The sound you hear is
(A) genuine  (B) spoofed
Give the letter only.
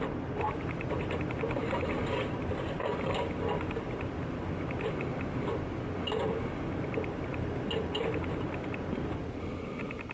A